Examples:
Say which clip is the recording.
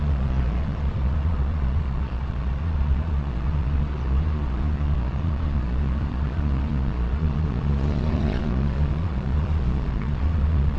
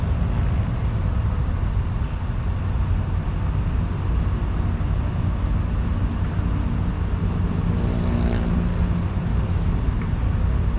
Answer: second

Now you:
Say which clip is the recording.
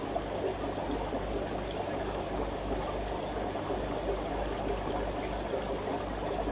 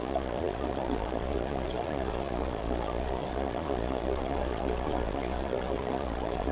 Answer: first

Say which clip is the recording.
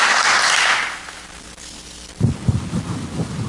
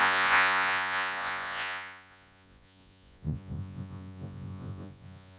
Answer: first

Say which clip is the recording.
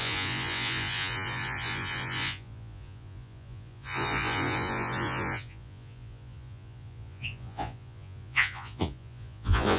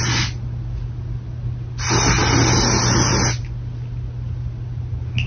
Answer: second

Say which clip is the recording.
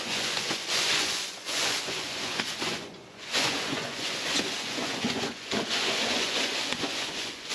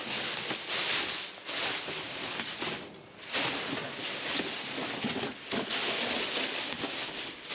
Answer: second